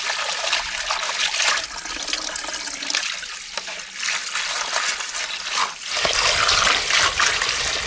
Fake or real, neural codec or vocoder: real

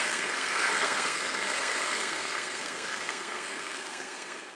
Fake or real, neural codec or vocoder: fake, codec, SNAC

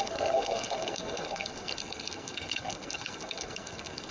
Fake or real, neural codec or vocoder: fake, codec, SNAC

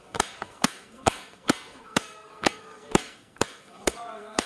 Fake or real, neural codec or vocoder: fake, codec, SNAC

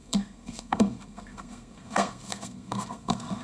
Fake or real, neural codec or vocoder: fake, codec, SNAC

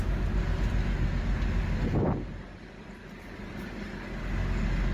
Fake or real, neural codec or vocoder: real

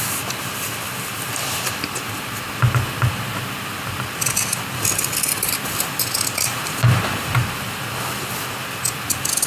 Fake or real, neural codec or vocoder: real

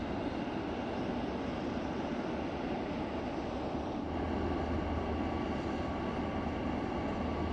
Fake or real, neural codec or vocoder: real